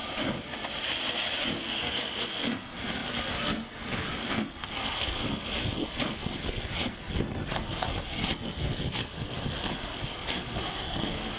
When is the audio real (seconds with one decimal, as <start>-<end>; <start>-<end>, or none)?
0.0-1.6